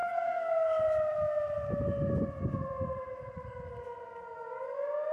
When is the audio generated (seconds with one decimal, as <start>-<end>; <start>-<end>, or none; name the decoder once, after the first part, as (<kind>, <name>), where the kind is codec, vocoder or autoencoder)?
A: 0.0-0.5 (codec, SNAC)